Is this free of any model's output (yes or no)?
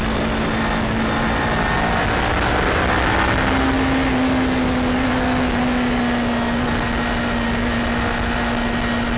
yes